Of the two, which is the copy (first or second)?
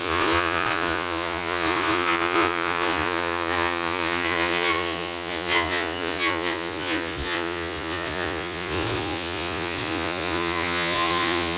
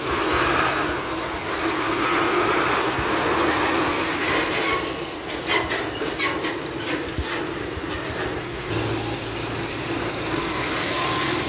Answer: first